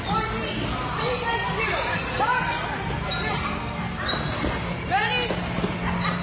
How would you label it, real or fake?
real